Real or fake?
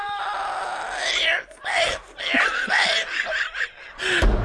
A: real